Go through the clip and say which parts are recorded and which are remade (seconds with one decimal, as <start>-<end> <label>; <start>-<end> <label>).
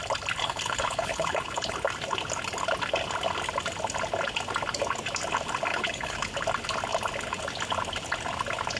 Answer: 0.0-0.4 recorded; 0.4-1.8 remade; 1.8-5.7 recorded; 5.7-6.3 remade; 6.3-8.8 recorded